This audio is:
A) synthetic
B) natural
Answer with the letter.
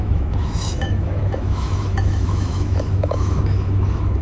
A